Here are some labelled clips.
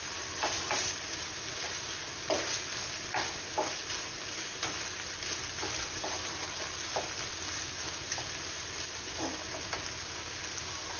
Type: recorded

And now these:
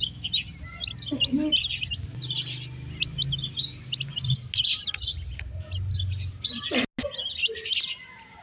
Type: recorded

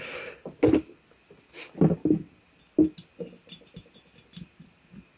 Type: recorded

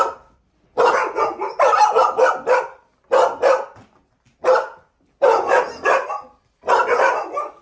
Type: recorded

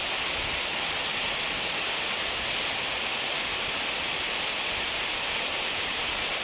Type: recorded